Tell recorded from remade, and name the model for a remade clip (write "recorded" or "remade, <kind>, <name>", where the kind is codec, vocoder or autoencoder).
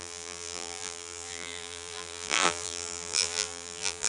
remade, vocoder, BigVGAN v2